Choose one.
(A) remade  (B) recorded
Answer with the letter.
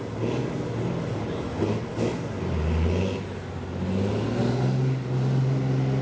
B